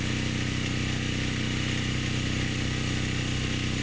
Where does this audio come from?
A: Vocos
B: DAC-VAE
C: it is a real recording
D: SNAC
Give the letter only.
C